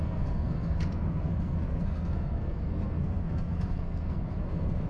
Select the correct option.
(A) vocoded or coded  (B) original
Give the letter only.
A